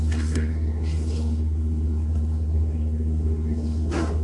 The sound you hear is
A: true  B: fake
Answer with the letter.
B